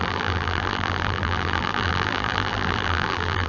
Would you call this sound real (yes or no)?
no